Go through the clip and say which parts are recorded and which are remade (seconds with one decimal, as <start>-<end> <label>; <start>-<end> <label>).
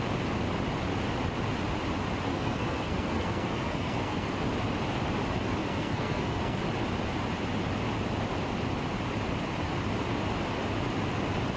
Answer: 0.0-2.3 recorded; 2.3-4.3 remade; 4.3-5.6 recorded; 5.6-6.6 remade; 6.6-11.6 recorded